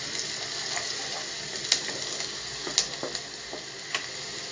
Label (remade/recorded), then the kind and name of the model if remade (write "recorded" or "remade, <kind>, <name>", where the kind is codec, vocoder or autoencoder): recorded